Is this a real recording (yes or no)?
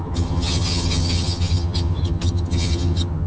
no